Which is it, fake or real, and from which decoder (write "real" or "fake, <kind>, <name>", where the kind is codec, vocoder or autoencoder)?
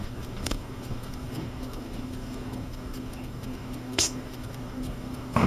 fake, codec, DAC